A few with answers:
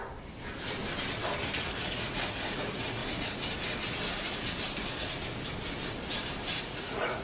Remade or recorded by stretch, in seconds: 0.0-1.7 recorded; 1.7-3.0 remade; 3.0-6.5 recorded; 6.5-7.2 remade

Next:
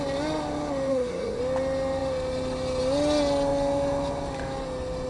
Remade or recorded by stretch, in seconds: 0.0-0.9 recorded; 0.9-1.4 remade; 1.4-5.1 recorded

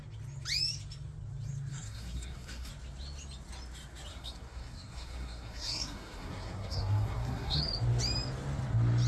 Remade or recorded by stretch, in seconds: 0.0-1.7 recorded; 1.7-2.7 remade; 2.7-4.1 recorded; 4.1-7.6 remade; 7.6-9.1 recorded

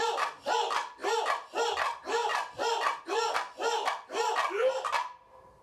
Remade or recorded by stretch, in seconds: 0.0-5.6 recorded

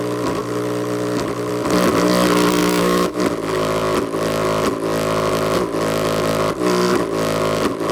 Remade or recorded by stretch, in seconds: 0.0-2.6 recorded; 2.6-3.2 remade; 3.2-7.9 recorded